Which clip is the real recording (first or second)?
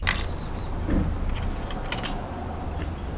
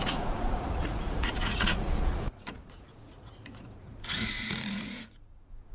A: first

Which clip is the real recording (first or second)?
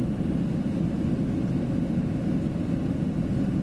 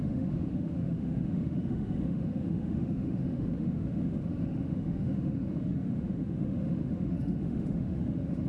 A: first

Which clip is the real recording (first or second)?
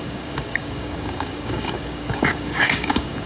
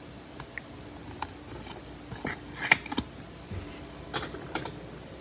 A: second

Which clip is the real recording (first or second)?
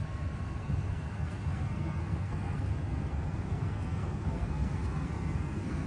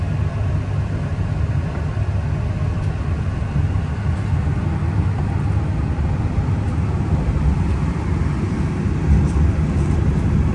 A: second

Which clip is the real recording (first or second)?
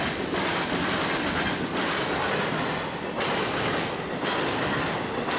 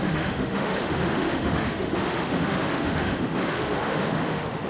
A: first